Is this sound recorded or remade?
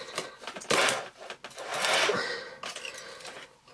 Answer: recorded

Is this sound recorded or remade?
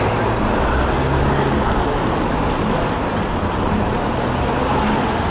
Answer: recorded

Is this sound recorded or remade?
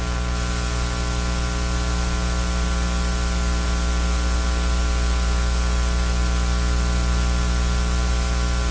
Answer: recorded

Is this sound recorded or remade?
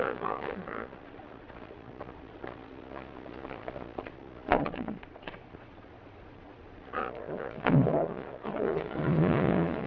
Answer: remade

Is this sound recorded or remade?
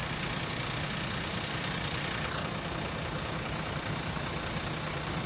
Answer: recorded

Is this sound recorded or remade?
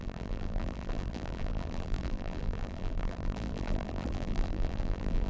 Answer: remade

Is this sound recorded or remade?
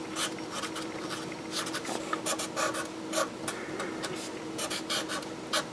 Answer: recorded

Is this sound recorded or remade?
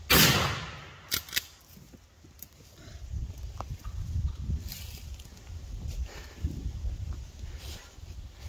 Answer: recorded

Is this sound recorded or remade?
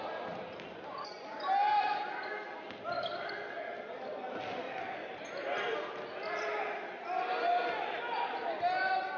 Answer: recorded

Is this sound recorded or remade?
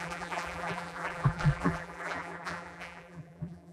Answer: remade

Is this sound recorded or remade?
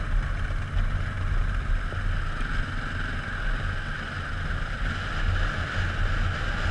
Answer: recorded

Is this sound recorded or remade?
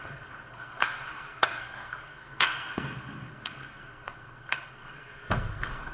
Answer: remade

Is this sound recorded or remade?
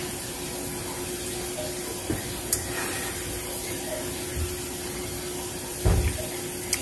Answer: recorded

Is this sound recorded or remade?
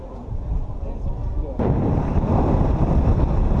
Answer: remade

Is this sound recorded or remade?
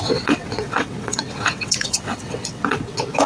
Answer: remade